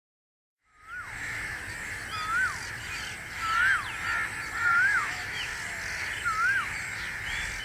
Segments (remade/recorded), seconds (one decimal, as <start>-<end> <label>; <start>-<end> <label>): 0.0-0.7 remade; 0.7-1.2 recorded; 1.2-1.6 remade; 1.6-4.6 recorded; 4.6-5.5 remade; 5.5-7.6 recorded